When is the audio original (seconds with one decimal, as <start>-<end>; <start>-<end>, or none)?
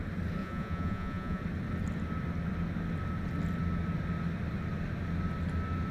0.0-0.4; 1.4-5.9